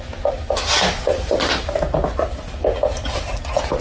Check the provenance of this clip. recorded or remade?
recorded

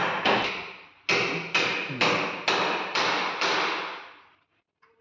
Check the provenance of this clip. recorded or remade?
recorded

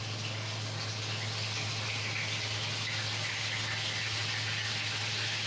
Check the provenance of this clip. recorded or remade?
recorded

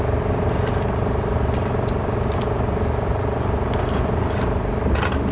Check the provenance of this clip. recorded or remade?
recorded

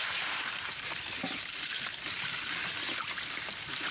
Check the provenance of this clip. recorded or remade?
remade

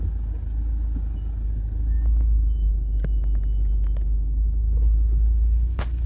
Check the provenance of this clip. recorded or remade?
recorded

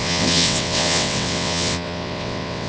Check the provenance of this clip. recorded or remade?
remade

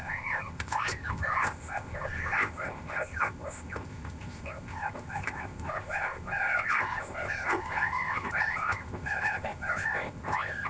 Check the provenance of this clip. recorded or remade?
remade